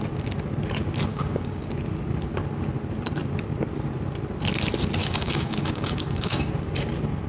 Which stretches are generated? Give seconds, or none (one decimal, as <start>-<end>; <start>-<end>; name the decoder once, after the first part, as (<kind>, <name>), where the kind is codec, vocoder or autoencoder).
1.1-1.7 (codec, DAC); 5.0-6.5